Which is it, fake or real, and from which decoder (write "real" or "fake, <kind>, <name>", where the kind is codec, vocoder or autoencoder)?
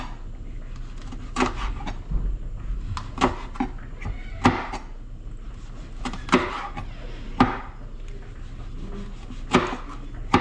real